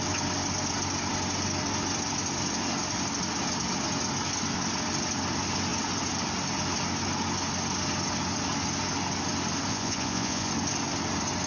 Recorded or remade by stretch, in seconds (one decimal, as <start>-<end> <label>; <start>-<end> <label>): 0.0-9.7 recorded; 9.7-10.5 remade; 10.5-11.5 recorded